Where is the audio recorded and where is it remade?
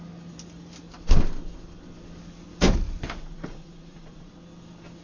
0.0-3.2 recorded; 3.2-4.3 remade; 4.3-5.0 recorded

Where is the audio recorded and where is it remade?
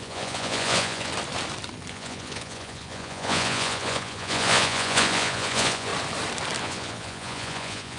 0.0-1.1 remade; 1.1-1.9 recorded; 1.9-5.9 remade; 5.9-6.6 recorded; 6.6-8.0 remade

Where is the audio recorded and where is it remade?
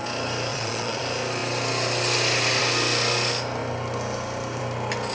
0.0-0.5 recorded; 0.5-1.0 remade; 1.0-5.1 recorded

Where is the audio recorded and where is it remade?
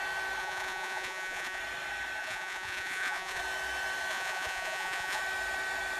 0.0-0.4 recorded; 0.4-1.6 remade; 1.6-2.2 recorded; 2.2-3.4 remade; 3.4-4.1 recorded; 4.1-5.2 remade; 5.2-6.0 recorded